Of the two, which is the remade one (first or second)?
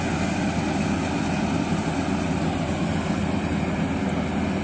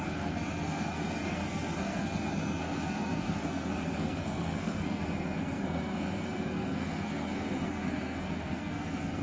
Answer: second